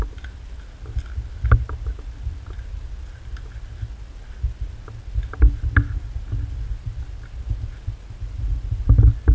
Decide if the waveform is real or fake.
real